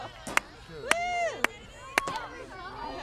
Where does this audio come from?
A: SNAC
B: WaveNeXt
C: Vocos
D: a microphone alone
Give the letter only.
D